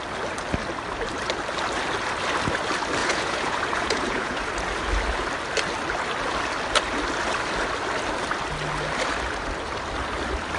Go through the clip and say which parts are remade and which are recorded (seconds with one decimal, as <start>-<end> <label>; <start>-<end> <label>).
0.0-3.0 recorded; 3.0-4.5 remade; 4.5-10.6 recorded